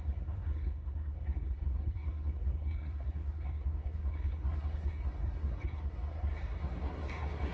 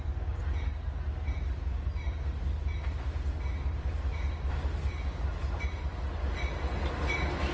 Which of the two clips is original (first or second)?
second